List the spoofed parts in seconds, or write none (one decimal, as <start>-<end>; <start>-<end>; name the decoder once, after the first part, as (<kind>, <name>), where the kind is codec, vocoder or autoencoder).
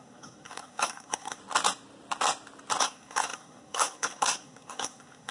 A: 0.0-1.4 (codec, SNAC); 2.8-5.3